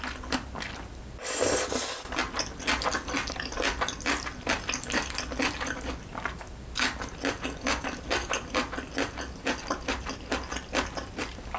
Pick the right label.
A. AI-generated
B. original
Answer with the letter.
B